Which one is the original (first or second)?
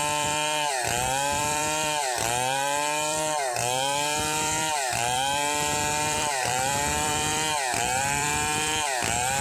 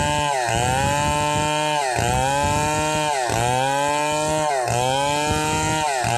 second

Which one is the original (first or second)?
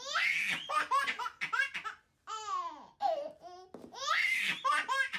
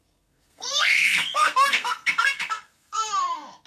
first